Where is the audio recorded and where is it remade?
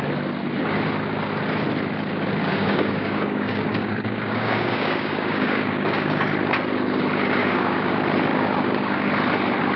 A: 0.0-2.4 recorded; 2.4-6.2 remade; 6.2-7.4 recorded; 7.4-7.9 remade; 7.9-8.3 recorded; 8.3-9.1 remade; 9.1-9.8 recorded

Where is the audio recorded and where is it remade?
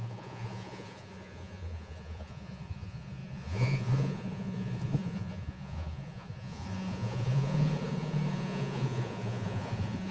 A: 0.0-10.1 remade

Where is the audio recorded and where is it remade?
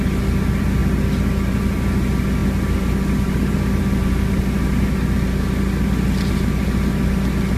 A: 0.0-7.6 recorded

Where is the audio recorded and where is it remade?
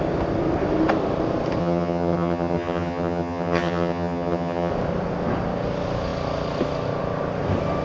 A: 0.0-1.6 recorded; 1.6-4.7 remade; 4.7-7.8 recorded